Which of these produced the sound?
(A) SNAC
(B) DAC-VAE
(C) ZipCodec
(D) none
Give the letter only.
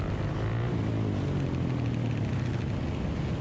D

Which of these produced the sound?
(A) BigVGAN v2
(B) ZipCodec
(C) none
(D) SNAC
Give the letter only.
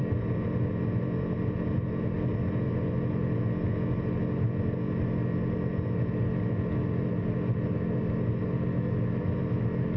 C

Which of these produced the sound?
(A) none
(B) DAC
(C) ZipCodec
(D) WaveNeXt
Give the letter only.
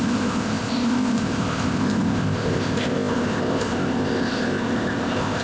C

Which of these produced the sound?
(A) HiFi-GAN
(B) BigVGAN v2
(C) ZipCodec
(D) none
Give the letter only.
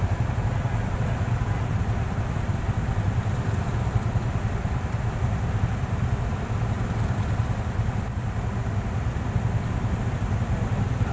D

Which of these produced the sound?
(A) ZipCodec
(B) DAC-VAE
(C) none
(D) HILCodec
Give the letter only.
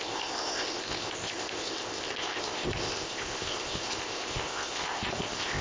A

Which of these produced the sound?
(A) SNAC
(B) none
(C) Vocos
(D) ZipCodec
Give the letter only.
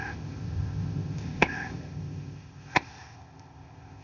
D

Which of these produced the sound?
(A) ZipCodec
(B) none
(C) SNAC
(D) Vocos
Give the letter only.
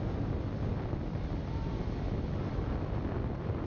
B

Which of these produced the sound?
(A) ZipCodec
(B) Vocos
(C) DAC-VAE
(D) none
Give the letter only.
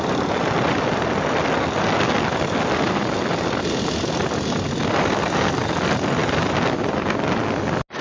D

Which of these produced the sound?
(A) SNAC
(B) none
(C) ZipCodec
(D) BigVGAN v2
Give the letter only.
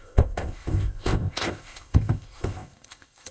C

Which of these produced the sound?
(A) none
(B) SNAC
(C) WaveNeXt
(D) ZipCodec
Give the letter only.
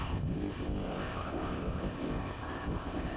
D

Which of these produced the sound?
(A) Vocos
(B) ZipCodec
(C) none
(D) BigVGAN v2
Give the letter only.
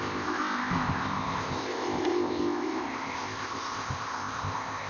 B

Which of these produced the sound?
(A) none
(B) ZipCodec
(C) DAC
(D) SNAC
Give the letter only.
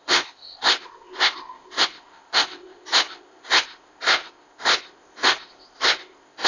B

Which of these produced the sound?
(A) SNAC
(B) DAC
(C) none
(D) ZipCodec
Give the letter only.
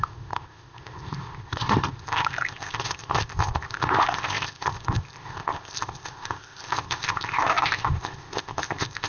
D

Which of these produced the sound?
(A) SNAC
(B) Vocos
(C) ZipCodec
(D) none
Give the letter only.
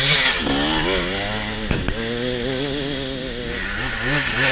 D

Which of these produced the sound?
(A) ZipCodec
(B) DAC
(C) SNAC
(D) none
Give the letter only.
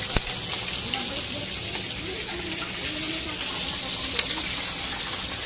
D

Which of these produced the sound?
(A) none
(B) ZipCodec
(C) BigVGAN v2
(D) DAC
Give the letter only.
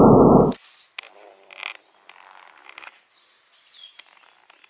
A